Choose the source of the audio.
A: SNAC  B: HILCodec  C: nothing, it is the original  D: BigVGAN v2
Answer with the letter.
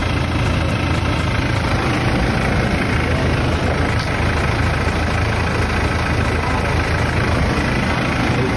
C